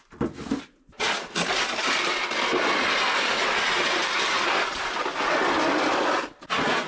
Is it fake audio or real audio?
real